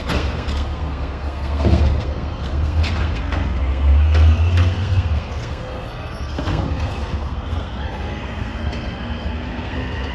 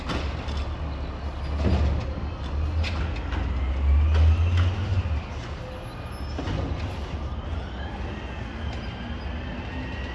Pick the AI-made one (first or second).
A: first